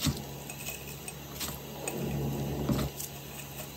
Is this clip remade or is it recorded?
recorded